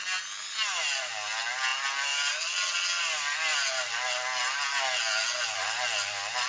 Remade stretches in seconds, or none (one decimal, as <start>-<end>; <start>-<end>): none

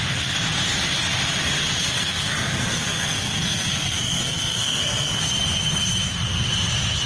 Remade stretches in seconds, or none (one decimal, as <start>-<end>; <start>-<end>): 1.8-5.2

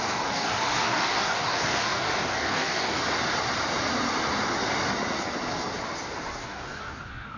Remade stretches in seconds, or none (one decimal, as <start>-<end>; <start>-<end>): 0.0-3.0; 6.4-7.4

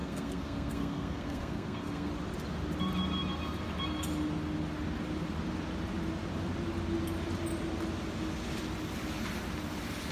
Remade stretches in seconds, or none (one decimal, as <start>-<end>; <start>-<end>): 0.0-2.1

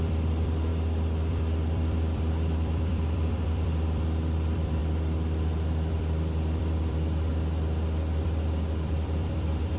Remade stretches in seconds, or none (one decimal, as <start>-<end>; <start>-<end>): 0.0-0.7; 1.3-4.8; 5.9-7.3; 8.2-9.8

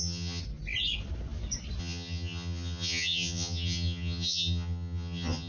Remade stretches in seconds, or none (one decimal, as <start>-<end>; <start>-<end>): 0.0-0.4; 1.8-5.5